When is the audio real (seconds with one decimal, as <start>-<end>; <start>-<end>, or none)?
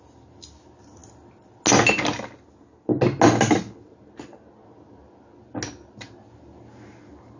0.0-7.4